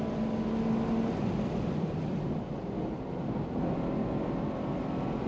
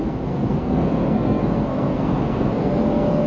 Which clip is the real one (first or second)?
first